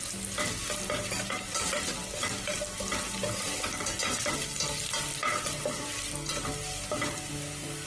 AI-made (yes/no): no